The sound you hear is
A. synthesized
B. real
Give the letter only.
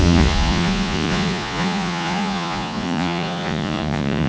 A